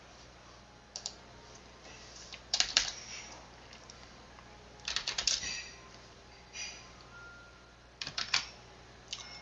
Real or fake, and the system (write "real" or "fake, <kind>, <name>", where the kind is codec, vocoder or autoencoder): fake, vocoder, BigVGAN v2